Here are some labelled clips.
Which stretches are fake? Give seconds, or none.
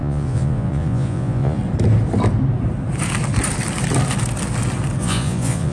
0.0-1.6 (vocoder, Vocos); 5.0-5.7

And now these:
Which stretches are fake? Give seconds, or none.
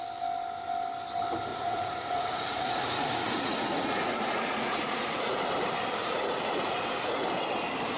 1.5-5.4 (vocoder, Vocos); 6.0-7.2